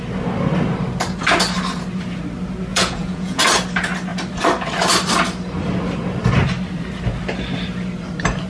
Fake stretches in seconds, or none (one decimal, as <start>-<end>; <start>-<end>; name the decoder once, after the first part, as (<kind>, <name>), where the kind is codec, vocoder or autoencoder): 2.7-3.4 (vocoder, Vocos)